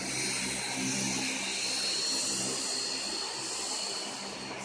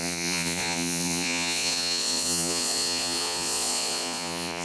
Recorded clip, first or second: first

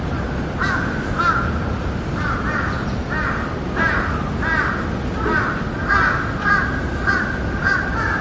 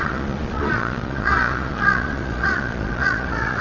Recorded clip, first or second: first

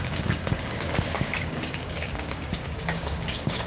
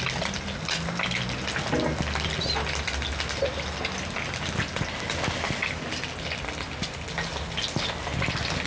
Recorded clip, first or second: second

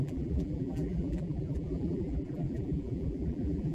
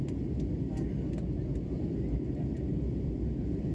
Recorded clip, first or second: second